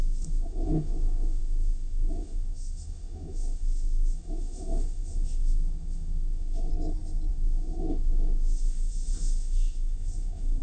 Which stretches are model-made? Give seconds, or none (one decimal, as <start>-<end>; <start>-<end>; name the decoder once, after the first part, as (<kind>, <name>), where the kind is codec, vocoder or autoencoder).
0.0-6.7 (autoencoder, DAC-VAE); 7.3-10.6